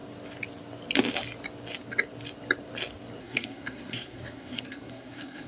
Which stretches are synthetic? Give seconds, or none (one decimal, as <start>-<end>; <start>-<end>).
3.2-5.5